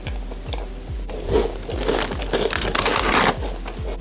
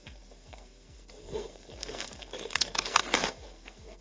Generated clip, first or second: second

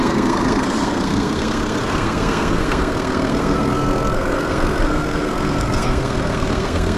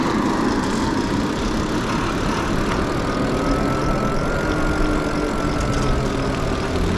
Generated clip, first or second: first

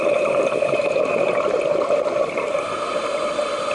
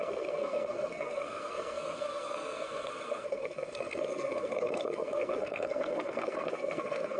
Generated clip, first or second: second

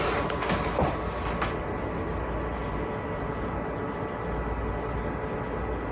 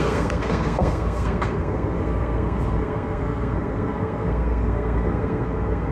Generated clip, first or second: second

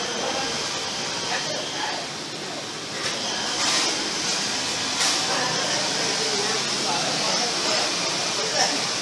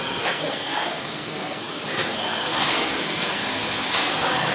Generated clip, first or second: second